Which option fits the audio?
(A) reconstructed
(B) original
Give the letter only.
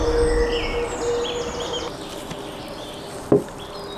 B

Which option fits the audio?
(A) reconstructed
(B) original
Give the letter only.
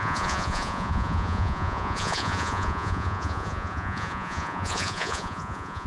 A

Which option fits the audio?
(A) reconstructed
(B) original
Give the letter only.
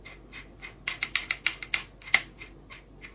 B